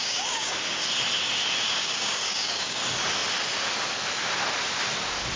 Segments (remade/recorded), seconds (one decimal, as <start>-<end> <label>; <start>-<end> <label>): 0.0-0.6 remade; 0.6-1.8 recorded; 1.8-2.8 remade; 2.8-5.4 recorded